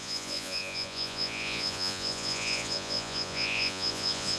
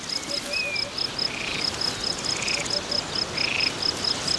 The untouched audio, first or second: second